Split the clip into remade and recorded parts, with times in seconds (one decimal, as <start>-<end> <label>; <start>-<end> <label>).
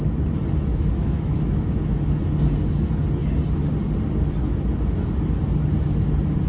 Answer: 0.0-0.7 recorded; 0.7-2.2 remade; 2.2-6.5 recorded